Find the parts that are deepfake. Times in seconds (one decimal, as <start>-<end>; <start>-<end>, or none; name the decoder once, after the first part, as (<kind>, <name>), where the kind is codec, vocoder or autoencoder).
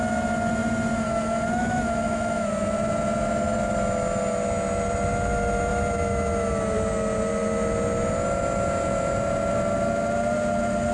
1.6-2.5 (autoencoder, DAC-VAE)